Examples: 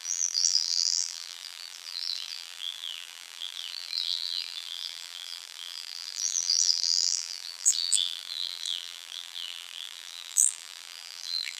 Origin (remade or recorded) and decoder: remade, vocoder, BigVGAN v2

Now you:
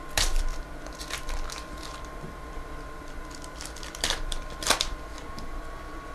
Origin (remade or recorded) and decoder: remade, vocoder, BigVGAN v2